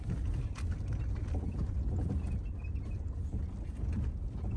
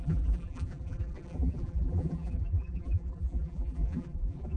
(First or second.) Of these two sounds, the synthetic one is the second